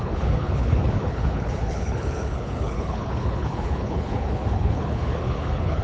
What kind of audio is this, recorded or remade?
remade